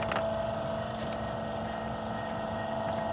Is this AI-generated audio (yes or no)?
no